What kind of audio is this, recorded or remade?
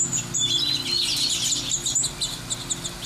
recorded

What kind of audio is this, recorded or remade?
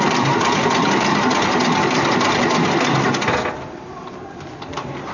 recorded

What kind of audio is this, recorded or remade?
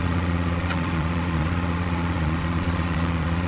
remade